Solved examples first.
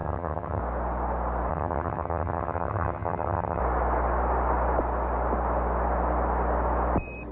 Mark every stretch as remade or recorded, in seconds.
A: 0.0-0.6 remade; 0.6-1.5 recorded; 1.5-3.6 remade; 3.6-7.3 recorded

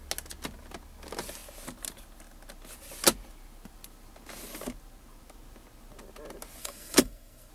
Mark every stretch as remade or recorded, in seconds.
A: 0.0-6.6 recorded; 6.6-7.5 remade